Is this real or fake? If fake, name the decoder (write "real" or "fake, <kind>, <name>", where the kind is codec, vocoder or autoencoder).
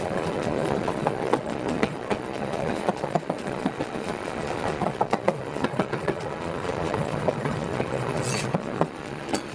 fake, vocoder, Vocos